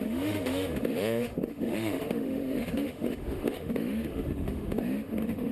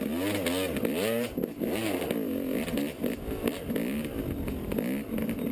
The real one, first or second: second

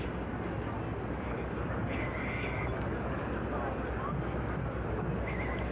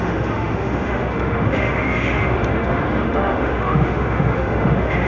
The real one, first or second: first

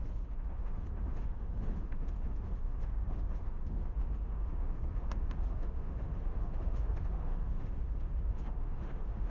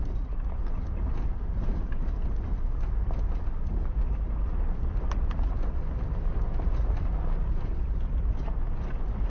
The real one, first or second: second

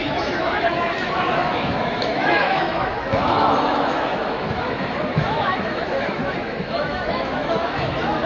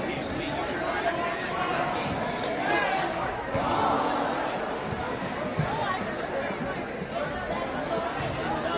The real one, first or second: second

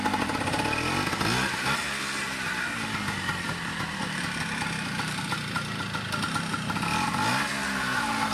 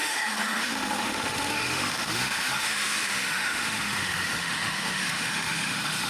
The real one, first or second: first